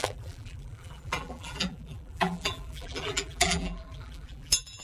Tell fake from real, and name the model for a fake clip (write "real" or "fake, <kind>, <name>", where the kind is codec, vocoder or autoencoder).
fake, vocoder, BigVGAN v2